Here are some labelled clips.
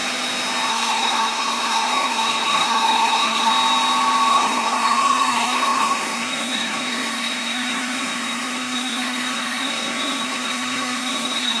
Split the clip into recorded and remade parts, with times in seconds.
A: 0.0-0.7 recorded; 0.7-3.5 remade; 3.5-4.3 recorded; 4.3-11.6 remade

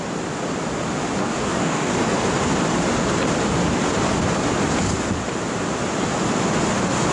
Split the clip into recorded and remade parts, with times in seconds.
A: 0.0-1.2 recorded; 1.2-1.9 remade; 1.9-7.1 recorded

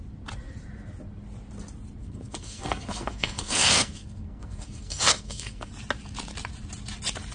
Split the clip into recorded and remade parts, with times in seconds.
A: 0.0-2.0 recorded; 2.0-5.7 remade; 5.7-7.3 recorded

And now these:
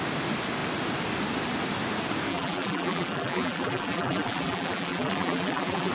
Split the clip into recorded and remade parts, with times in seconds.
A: 0.0-2.3 recorded; 2.3-5.9 remade